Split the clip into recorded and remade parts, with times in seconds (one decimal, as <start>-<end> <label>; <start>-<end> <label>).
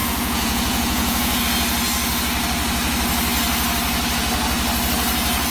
0.0-1.4 remade; 1.4-5.5 recorded